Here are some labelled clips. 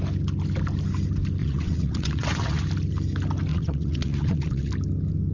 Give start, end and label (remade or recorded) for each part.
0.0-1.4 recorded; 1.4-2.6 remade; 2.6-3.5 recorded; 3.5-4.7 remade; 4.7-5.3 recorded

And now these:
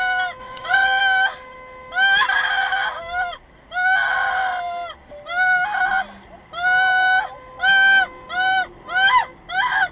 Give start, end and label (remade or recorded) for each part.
0.0-0.4 recorded; 0.4-1.0 remade; 1.0-9.9 recorded

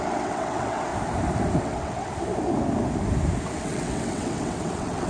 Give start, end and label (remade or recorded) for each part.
0.0-0.9 remade; 0.9-1.6 recorded; 1.6-2.1 remade; 2.1-3.6 recorded; 3.6-5.1 remade

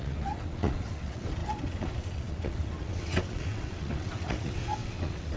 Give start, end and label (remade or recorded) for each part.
0.0-5.4 remade

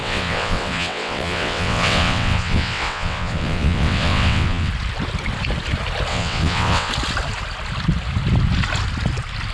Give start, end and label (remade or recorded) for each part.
0.0-4.7 remade; 4.7-6.1 recorded; 6.1-6.9 remade; 6.9-9.5 recorded

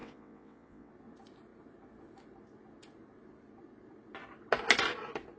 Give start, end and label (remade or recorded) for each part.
0.0-0.9 remade; 0.9-5.4 recorded